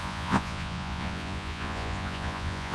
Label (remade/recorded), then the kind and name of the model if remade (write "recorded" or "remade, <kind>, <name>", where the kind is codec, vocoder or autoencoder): remade, vocoder, Vocos